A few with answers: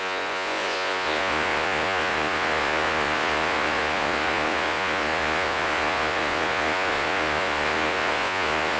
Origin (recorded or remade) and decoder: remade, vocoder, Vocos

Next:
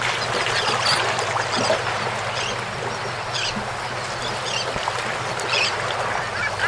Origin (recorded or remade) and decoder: recorded